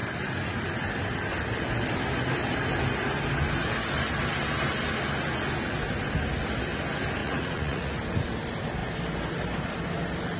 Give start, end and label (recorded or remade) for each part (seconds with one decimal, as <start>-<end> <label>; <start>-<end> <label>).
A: 0.0-7.2 recorded; 7.2-7.9 remade; 7.9-10.4 recorded